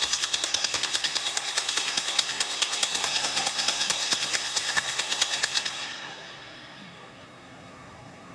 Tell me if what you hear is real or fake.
fake